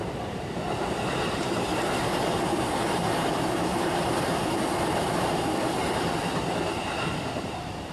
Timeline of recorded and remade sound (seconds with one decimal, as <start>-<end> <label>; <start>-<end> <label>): 0.0-5.8 remade; 5.8-7.4 recorded; 7.4-7.9 remade

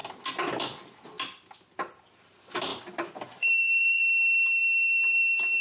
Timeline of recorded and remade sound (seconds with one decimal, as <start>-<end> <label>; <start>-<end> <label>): 0.0-2.7 recorded; 2.7-4.0 remade; 4.0-4.6 recorded; 4.6-5.6 remade

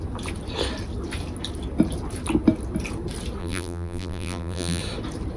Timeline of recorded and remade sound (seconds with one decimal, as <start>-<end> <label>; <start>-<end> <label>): 0.0-3.4 recorded; 3.4-4.8 remade; 4.8-5.4 recorded

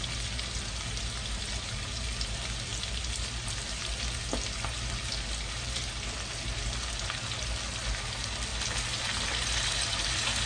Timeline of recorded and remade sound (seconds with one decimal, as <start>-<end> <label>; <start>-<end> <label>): 0.0-10.5 recorded

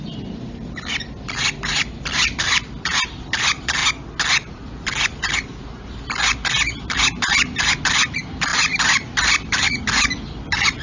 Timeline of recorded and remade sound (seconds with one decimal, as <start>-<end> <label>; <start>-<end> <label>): 0.0-3.8 remade; 3.8-4.5 recorded; 4.5-10.8 remade

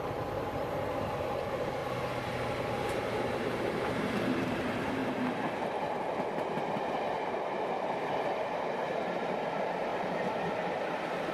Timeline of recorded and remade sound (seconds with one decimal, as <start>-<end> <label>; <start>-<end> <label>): 0.0-1.8 remade; 1.8-2.8 recorded; 2.8-5.0 remade; 5.0-6.8 recorded; 6.8-11.3 remade